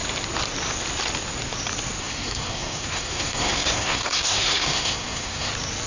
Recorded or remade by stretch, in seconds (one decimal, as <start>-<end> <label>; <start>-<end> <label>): 0.0-2.0 recorded; 2.0-5.5 remade; 5.5-5.9 recorded